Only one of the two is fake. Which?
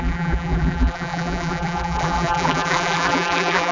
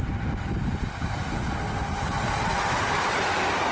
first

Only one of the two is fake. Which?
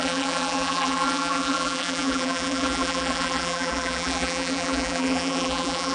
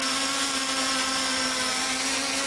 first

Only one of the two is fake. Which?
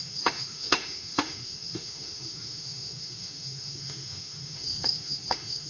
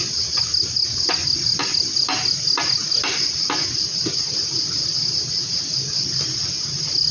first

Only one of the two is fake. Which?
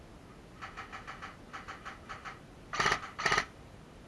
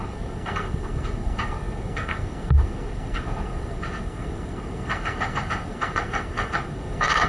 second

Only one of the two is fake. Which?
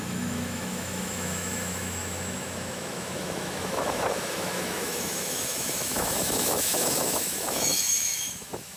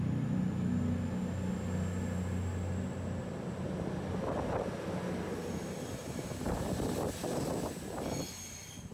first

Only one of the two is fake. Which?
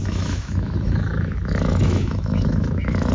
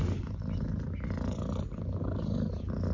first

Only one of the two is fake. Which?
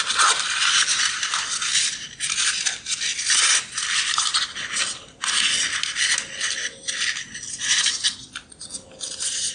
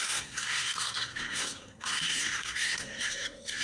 second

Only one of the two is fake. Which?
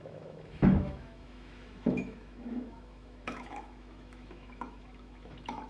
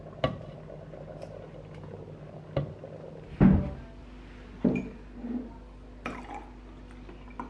first